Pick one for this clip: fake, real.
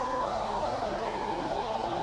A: fake